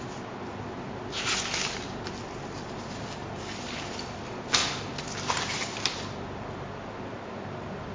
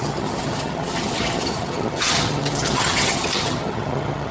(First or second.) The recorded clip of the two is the first